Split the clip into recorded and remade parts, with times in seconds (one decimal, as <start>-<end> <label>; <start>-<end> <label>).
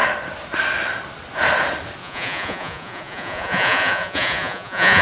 0.0-2.0 recorded; 2.0-5.0 remade